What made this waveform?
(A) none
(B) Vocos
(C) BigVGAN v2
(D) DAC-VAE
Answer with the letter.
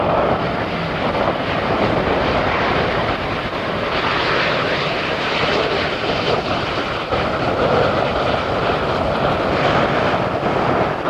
A